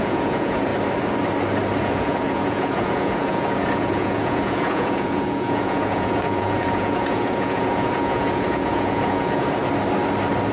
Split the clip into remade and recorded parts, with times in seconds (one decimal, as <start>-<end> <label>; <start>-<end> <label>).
0.0-0.7 remade; 0.7-1.8 recorded; 1.8-9.6 remade; 9.6-10.5 recorded